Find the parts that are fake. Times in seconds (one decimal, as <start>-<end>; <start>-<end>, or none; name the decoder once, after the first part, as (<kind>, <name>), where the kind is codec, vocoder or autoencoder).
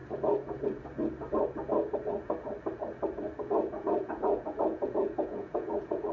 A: 3.7-6.1 (vocoder, Vocos)